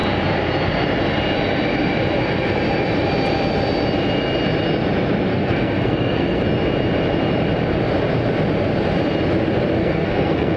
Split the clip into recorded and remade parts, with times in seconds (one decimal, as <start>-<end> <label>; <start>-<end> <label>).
0.0-5.3 recorded; 5.3-6.4 remade; 6.4-9.8 recorded; 9.8-10.6 remade